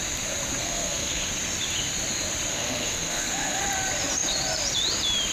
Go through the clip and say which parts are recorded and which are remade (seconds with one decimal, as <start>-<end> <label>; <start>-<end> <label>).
0.0-0.6 recorded; 0.6-1.3 remade; 1.3-2.5 recorded; 2.5-3.6 remade; 3.6-5.3 recorded